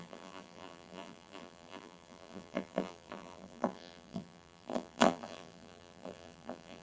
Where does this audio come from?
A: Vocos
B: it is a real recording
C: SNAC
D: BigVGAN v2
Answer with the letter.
D